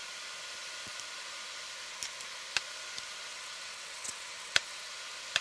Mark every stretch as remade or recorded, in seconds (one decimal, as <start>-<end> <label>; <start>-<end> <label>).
0.0-3.3 recorded; 3.3-4.9 remade; 4.9-5.4 recorded